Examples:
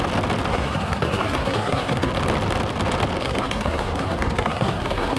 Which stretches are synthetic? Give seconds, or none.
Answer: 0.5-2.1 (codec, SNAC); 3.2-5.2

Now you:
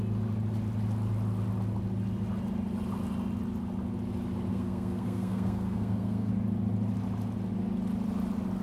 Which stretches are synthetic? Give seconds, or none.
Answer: 4.5-6.3 (codec, SNAC)